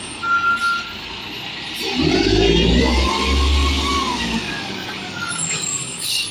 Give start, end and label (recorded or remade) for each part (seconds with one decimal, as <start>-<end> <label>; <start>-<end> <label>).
0.0-0.6 remade; 0.6-2.8 recorded; 2.8-6.3 remade